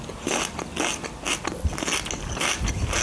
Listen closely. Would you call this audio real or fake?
real